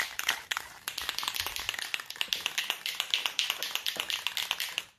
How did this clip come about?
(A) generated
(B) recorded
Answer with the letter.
B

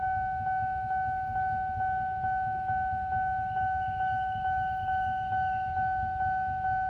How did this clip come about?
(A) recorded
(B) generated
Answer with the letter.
A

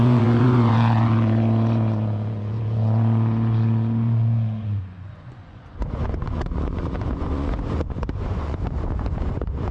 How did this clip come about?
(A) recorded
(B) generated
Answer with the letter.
B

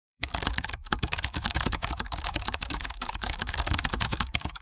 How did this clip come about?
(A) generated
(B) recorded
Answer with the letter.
A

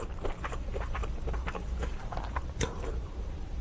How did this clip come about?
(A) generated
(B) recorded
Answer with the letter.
A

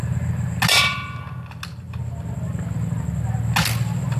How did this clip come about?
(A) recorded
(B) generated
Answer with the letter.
A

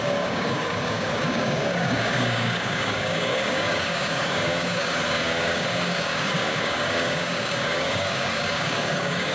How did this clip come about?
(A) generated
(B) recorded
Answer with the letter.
A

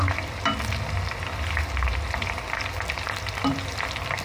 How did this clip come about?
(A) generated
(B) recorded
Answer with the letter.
B